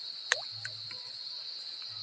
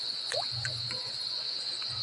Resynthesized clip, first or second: second